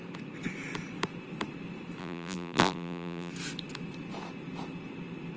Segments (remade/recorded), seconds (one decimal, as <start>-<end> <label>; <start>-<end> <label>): 0.0-2.0 recorded; 2.0-3.3 remade; 3.3-5.4 recorded